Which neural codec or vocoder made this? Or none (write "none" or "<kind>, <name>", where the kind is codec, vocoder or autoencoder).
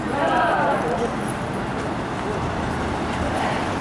none